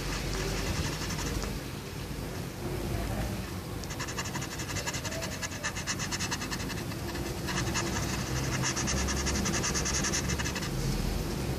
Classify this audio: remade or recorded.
recorded